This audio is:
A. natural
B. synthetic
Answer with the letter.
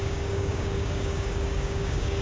B